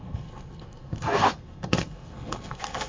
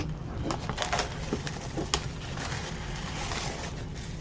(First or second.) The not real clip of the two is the first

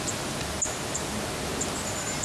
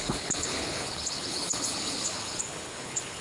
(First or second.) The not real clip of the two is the second